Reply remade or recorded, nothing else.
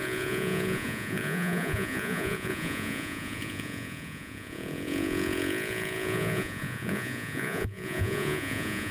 remade